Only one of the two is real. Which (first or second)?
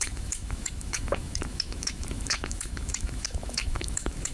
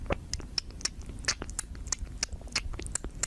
second